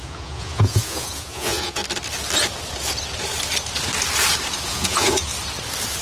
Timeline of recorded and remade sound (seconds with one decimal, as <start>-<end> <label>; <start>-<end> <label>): 0.0-1.8 remade; 1.8-4.7 recorded; 4.7-5.3 remade; 5.3-6.0 recorded